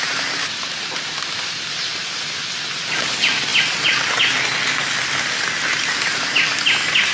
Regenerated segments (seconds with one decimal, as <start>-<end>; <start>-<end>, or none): none